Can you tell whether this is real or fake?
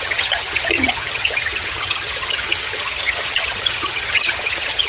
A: fake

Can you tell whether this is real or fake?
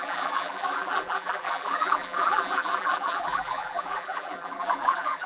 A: fake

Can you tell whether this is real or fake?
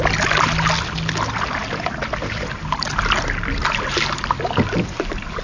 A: real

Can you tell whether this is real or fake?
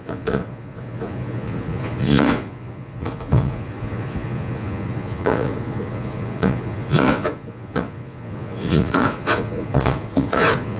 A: fake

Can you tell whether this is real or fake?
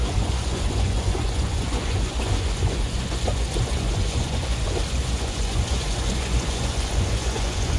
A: fake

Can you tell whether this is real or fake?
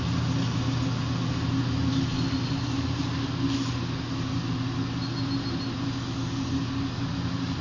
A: real